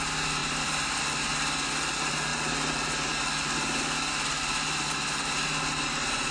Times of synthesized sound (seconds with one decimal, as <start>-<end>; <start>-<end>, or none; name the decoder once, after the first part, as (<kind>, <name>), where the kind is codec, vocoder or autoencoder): 0.4-1.0 (vocoder, BigVGAN v2)